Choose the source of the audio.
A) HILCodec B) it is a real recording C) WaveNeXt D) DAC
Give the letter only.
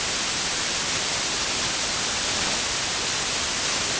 B